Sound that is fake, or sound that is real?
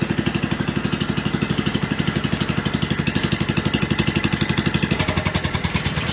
real